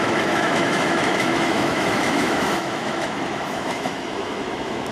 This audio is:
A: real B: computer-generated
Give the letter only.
B